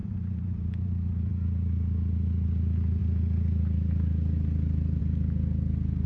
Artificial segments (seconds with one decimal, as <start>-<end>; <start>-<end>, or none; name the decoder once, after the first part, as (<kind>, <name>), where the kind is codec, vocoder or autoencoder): 0.0-1.3 (vocoder, BigVGAN v2)